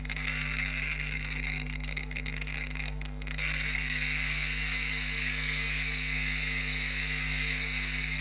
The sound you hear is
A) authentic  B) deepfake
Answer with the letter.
B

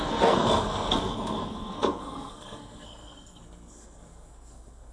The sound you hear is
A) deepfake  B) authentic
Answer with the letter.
A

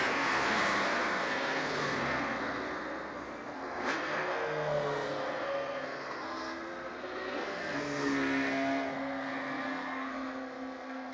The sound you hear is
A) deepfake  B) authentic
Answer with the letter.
A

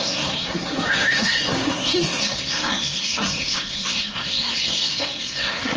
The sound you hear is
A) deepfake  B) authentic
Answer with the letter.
A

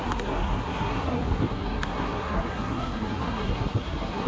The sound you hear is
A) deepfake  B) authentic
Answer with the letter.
A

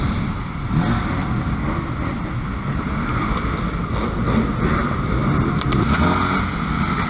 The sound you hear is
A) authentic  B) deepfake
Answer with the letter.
A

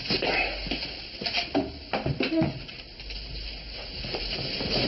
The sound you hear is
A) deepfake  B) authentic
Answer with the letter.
B